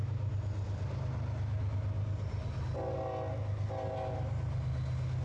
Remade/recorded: recorded